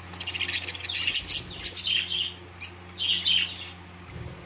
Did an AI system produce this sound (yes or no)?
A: no